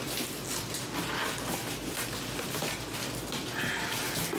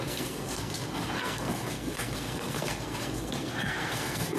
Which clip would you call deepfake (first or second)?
second